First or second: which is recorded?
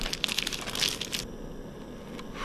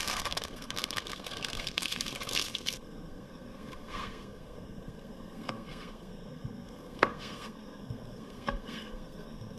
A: first